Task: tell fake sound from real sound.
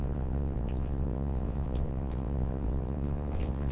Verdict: fake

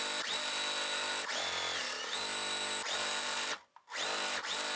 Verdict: real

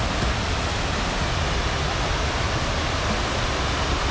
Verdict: real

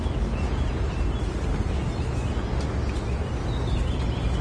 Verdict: real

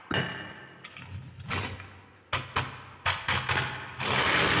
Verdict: real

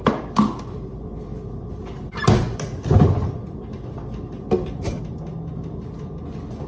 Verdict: real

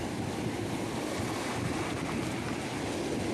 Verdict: real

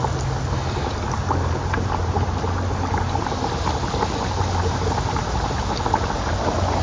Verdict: real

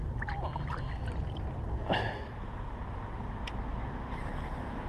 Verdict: real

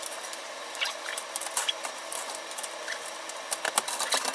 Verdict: fake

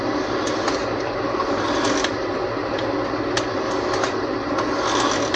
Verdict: real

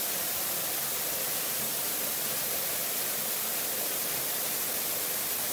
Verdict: real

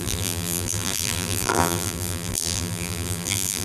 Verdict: fake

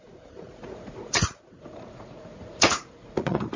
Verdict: fake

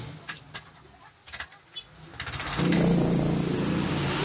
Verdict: real